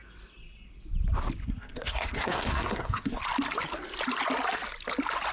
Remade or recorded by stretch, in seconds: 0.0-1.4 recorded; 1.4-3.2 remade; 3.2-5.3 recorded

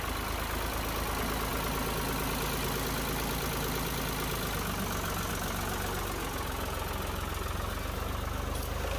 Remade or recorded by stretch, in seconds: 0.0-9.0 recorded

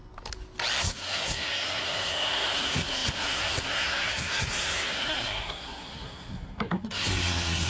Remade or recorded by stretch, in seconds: 0.0-0.8 recorded; 0.8-7.7 remade